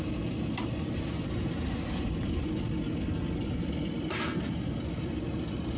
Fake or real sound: real